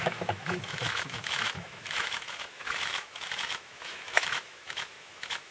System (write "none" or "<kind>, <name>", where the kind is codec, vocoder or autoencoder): autoencoder, DAC-VAE